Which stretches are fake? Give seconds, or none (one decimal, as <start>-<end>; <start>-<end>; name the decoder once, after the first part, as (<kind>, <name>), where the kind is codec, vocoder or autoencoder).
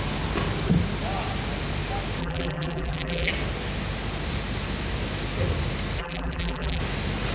2.2-3.3 (vocoder, BigVGAN v2); 6.0-6.8